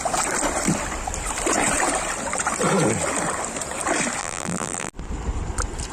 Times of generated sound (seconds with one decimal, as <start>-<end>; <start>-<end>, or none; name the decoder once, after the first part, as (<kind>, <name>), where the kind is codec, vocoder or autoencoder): 4.2-4.9 (vocoder, BigVGAN v2)